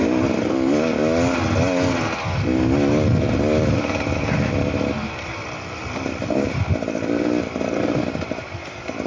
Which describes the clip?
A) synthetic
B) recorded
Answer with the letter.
B